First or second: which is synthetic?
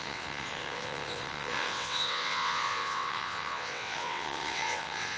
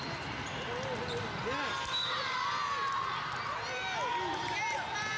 first